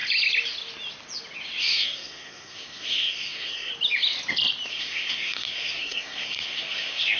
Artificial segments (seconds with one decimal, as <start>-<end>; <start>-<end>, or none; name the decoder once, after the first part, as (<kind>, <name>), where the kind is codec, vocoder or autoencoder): 1.6-3.7 (codec, SNAC); 4.7-7.2